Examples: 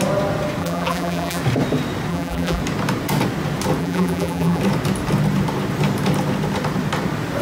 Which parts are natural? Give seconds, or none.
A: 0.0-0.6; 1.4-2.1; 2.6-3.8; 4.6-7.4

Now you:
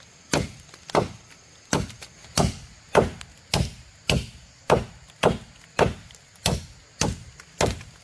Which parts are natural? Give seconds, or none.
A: 0.0-8.0

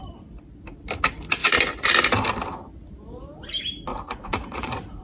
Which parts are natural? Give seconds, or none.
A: 0.0-3.9

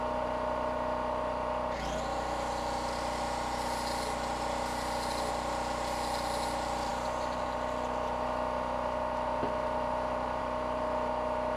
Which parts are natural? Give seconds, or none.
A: 0.0-11.6

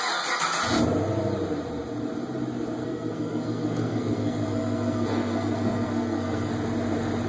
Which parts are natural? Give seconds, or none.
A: 0.0-2.8; 6.5-7.3

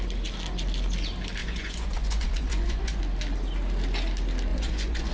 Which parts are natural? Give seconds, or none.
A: 0.0-1.4; 3.0-4.5